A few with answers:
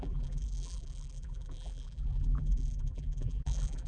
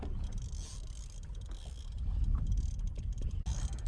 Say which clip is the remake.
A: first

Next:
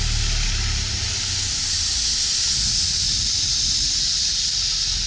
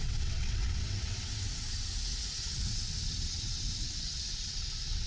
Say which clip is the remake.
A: second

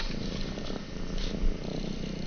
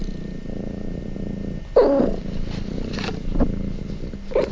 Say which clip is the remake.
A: first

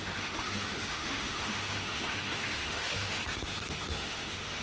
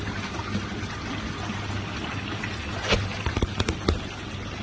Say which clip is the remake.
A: first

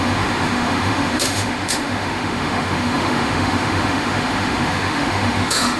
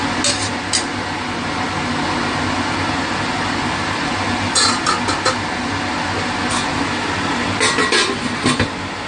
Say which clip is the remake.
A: first